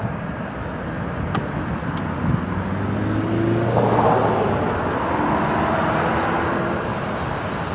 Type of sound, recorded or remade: recorded